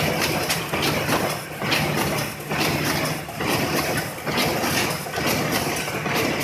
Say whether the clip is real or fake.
real